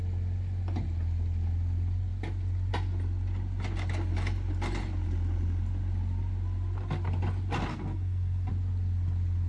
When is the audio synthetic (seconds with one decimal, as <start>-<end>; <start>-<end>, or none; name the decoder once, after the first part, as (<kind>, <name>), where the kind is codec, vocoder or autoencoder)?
7.7-8.5 (codec, SNAC)